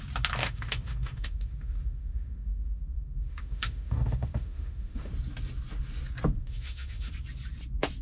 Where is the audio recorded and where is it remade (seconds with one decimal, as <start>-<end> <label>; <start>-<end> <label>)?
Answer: 0.0-0.4 recorded; 0.4-5.1 remade; 5.1-6.4 recorded; 6.4-7.1 remade; 7.1-8.0 recorded